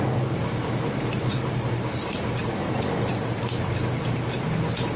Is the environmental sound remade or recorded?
recorded